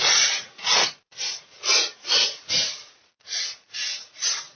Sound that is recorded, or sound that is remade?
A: remade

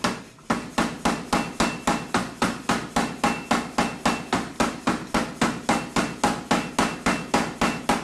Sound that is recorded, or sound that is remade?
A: recorded